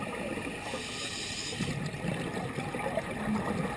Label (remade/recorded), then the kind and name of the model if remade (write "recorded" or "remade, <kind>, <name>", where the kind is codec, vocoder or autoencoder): recorded